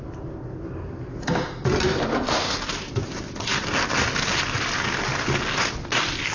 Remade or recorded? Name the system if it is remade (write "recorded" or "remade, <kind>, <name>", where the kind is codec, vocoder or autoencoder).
recorded